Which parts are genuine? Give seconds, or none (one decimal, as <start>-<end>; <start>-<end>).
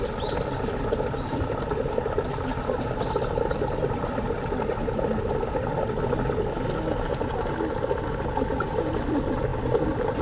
0.0-10.2